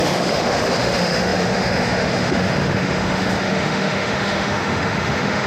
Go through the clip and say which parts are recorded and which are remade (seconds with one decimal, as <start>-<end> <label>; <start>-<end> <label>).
0.0-5.5 remade